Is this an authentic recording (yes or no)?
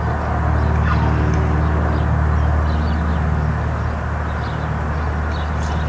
yes